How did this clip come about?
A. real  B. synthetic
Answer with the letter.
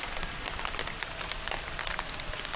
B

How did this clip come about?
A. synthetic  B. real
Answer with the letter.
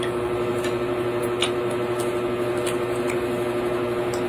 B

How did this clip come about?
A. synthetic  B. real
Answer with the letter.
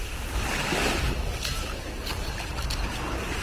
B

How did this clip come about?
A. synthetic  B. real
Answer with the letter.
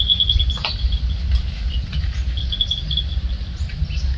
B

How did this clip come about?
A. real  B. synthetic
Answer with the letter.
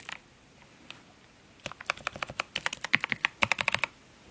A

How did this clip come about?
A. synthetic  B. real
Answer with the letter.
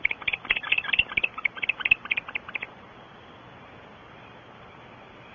A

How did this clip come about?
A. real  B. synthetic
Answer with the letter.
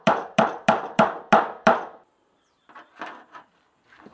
B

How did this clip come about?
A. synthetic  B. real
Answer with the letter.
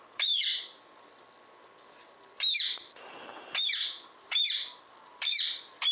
A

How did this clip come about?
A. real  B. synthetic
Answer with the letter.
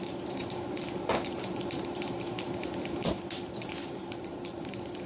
B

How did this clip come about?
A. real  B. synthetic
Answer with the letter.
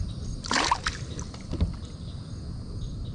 A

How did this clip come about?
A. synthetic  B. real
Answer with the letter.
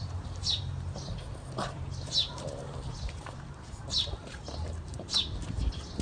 A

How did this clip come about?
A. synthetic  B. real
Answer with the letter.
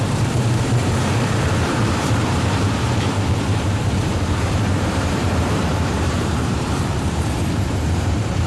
A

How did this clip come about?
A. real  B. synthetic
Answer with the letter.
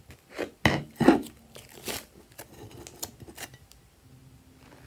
A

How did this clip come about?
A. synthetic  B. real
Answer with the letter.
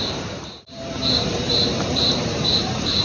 A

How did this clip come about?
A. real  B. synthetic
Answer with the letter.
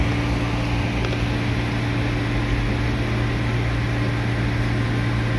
A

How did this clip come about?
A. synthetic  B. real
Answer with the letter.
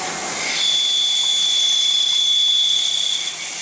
B